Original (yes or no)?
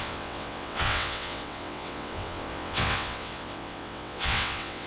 no